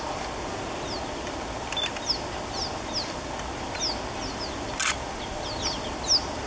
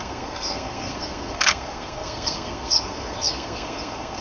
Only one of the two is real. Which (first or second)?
first